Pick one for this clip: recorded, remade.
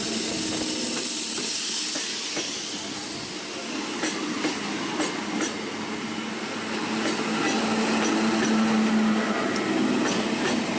recorded